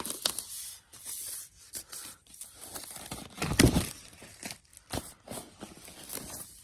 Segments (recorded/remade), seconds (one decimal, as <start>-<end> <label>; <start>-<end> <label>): 0.0-6.6 recorded